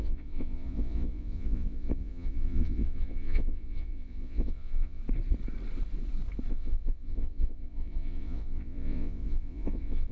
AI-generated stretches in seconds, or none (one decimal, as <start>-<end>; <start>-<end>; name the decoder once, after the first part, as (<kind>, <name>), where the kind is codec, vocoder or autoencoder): 0.0-5.0 (vocoder, Vocos); 6.5-10.1